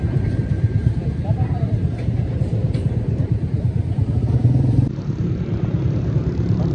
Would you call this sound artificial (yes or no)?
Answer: yes